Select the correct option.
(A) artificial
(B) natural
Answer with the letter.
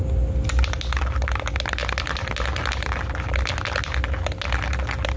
B